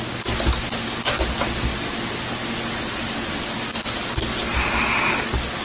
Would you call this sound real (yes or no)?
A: yes